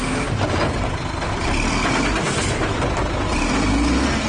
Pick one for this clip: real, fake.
real